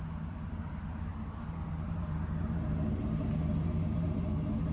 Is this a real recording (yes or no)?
no